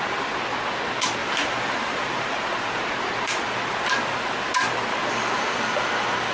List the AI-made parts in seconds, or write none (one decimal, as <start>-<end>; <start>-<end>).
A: 1.2-3.3